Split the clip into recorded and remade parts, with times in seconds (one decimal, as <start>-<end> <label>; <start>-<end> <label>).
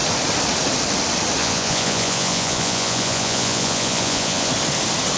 0.0-1.4 recorded; 1.4-4.5 remade; 4.5-5.2 recorded